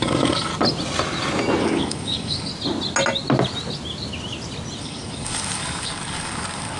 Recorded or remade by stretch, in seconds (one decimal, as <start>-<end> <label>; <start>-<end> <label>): 0.0-0.5 remade; 0.5-1.6 recorded; 1.6-2.5 remade; 2.5-4.8 recorded; 4.8-6.8 remade